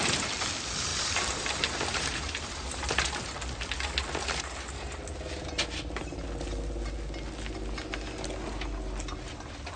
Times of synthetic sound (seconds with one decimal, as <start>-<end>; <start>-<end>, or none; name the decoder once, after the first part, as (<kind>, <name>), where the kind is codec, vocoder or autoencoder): 0.9-3.1 (vocoder, BigVGAN v2)